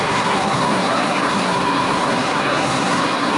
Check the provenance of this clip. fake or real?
fake